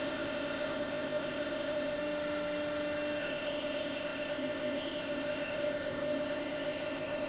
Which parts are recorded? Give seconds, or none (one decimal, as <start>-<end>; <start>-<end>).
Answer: 2.0-3.2